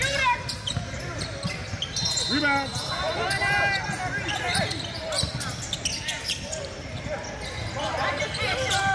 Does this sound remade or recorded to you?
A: recorded